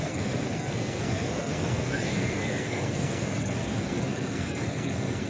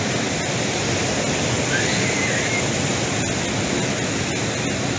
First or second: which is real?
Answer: second